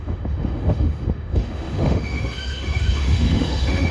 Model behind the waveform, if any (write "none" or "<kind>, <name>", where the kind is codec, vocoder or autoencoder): autoencoder, DAC-VAE